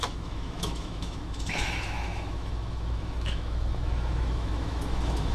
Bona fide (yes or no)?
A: no